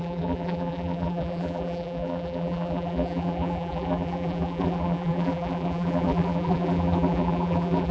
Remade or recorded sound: remade